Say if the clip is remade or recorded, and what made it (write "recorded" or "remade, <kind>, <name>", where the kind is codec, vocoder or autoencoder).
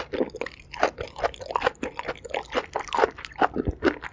recorded